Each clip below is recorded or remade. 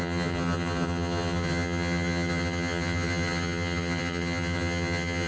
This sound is remade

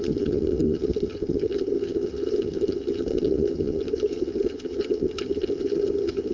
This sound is remade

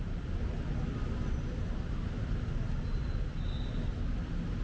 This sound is recorded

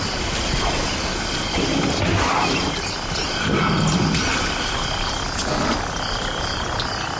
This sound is recorded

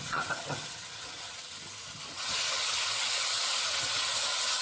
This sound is remade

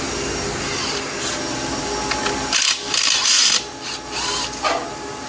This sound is recorded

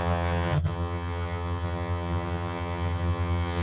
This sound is remade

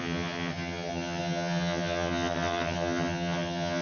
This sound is remade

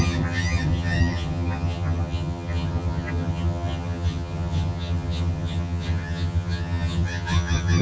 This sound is remade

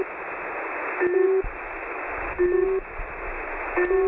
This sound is recorded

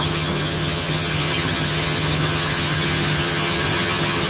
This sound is remade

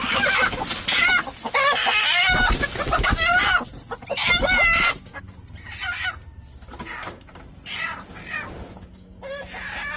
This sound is recorded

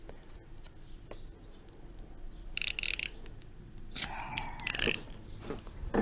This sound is recorded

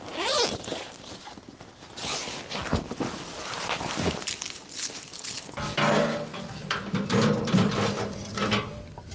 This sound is recorded